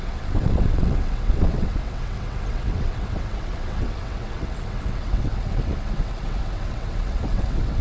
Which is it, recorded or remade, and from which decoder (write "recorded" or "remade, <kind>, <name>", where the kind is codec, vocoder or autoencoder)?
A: remade, vocoder, WaveNeXt